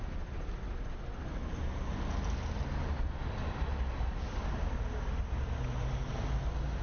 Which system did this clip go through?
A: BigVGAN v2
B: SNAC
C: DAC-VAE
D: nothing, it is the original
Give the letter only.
D